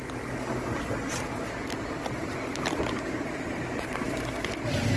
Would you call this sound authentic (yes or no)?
yes